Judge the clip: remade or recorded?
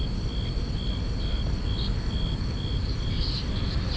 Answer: recorded